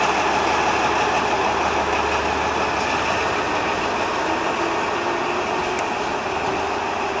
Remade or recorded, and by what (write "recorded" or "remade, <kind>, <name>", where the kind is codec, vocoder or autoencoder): recorded